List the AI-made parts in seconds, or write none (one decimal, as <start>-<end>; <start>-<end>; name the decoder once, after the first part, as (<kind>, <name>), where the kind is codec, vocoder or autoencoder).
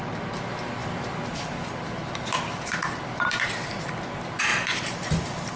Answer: 0.8-3.5 (vocoder, BigVGAN v2); 4.5-5.6